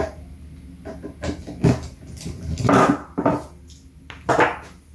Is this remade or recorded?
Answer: recorded